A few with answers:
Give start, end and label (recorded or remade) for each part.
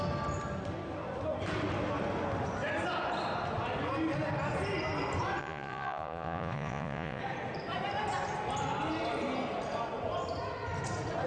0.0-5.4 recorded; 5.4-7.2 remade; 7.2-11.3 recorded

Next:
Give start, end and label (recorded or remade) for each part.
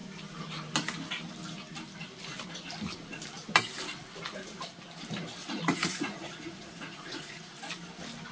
0.0-5.4 recorded; 5.4-7.6 remade; 7.6-8.3 recorded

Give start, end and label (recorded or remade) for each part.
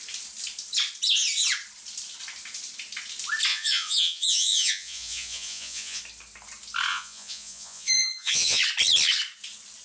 0.0-3.5 recorded; 3.5-6.0 remade; 6.0-6.9 recorded; 6.9-8.6 remade; 8.6-9.8 recorded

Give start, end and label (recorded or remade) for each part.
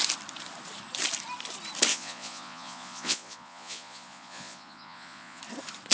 0.0-1.9 recorded; 1.9-5.4 remade; 5.4-5.9 recorded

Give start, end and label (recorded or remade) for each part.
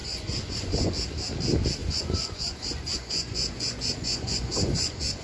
0.0-0.9 remade; 0.9-1.8 recorded; 1.8-5.2 remade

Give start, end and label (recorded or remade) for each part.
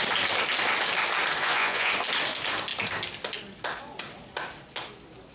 0.0-1.4 recorded; 1.4-1.9 remade; 1.9-5.3 recorded